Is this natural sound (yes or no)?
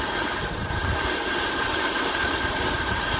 no